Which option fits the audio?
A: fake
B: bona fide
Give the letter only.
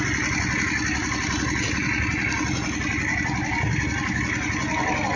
B